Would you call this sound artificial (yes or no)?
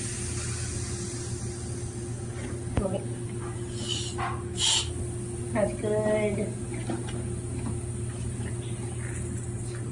no